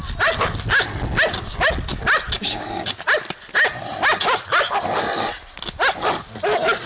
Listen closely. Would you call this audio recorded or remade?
recorded